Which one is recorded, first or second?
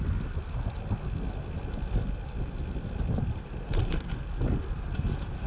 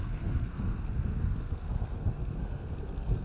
first